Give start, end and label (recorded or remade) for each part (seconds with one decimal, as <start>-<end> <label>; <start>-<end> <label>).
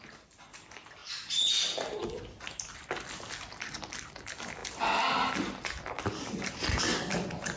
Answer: 0.0-7.6 recorded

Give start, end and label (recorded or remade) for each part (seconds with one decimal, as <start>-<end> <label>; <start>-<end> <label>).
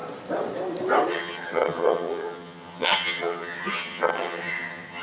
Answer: 0.0-1.1 recorded; 1.1-5.0 remade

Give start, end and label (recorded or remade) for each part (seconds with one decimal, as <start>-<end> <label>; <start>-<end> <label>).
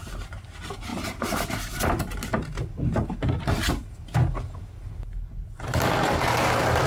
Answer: 0.0-6.9 recorded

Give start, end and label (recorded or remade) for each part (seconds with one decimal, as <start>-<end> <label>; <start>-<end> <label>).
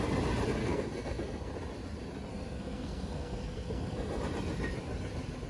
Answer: 0.0-0.6 recorded; 0.6-1.5 remade; 1.5-2.3 recorded; 2.3-4.2 remade; 4.2-5.5 recorded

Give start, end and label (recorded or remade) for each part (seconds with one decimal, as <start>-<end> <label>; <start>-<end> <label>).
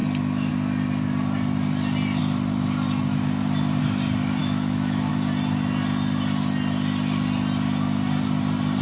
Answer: 0.0-4.4 recorded; 4.4-5.1 remade; 5.1-8.8 recorded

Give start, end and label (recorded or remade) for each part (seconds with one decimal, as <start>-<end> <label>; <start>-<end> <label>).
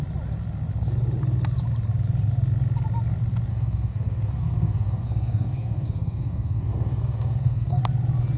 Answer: 0.0-3.5 recorded; 3.5-7.8 remade; 7.8-8.4 recorded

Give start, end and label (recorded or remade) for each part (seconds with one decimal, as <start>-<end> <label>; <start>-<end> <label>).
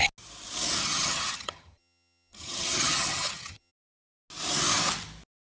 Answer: 0.0-0.8 recorded; 0.8-3.7 remade; 3.7-5.6 recorded